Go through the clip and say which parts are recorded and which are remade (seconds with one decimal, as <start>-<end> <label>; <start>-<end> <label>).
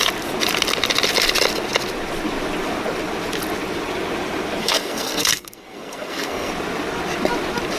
0.0-4.6 recorded; 4.6-6.5 remade; 6.5-7.8 recorded